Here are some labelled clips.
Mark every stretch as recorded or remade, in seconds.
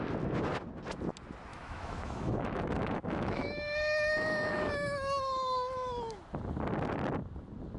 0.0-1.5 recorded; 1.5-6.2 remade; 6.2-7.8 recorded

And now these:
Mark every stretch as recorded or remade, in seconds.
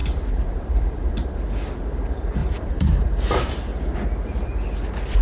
0.0-1.1 remade; 1.1-2.4 recorded; 2.4-3.5 remade; 3.5-5.2 recorded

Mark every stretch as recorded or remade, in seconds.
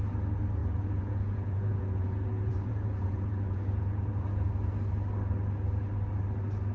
0.0-0.6 recorded; 0.6-4.5 remade; 4.5-6.7 recorded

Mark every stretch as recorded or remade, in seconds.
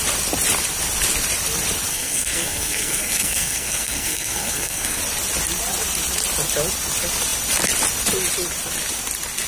0.0-1.9 recorded; 1.9-5.0 remade; 5.0-9.5 recorded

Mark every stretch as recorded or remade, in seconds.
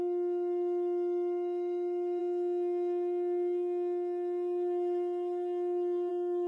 0.0-2.2 remade; 2.2-6.1 recorded; 6.1-6.5 remade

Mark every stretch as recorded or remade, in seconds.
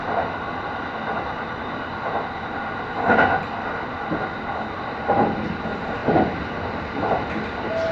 0.0-7.9 recorded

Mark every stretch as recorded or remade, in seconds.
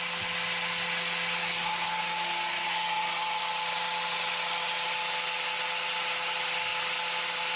0.0-7.6 recorded